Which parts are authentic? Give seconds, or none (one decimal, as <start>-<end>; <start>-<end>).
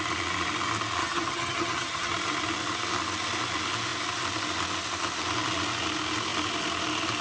0.0-1.0; 2.1-7.2